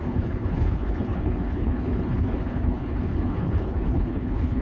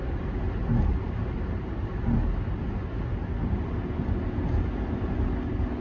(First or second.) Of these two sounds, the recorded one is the second